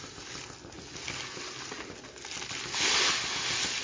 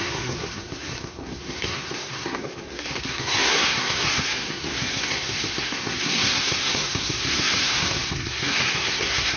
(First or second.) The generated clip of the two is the second